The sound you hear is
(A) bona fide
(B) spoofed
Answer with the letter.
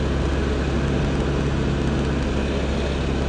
A